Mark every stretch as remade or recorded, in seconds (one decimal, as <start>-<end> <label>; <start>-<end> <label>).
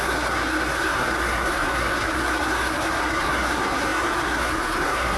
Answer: 0.0-5.2 remade